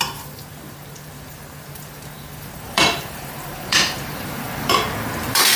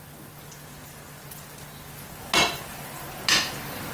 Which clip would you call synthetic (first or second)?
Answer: first